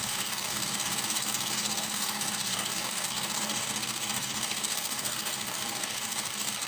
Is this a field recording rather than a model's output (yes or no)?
no